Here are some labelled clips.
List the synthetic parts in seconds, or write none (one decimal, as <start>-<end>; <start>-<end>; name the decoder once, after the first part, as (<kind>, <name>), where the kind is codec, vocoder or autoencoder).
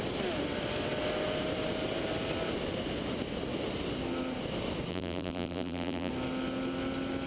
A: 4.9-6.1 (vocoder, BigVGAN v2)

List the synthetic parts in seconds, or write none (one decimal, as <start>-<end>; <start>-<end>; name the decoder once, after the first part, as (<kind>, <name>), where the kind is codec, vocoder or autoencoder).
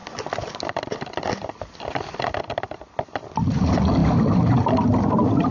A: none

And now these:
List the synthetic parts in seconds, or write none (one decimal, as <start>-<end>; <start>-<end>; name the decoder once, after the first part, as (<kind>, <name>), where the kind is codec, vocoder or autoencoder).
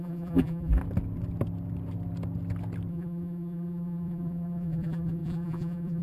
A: 0.0-0.8 (vocoder, BigVGAN v2); 2.9-6.0